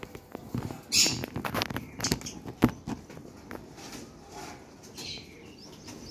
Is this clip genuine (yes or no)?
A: yes